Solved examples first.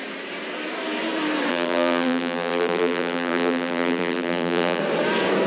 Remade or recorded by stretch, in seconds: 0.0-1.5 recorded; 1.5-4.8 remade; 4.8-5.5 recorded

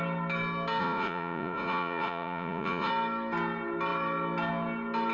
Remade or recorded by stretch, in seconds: 0.0-0.8 recorded; 0.8-2.9 remade; 2.9-5.1 recorded